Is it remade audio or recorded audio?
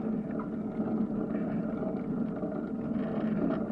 recorded